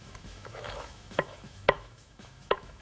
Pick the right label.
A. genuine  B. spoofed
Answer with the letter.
B